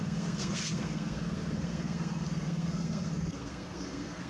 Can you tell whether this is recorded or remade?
remade